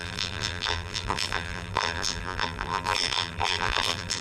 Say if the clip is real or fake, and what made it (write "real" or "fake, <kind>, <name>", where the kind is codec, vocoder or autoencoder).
fake, vocoder, BigVGAN v2